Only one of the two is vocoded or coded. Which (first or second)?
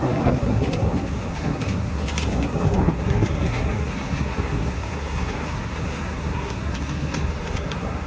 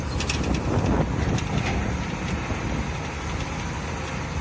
first